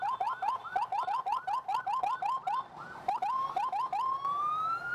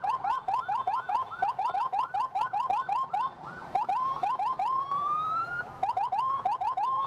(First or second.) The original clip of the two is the first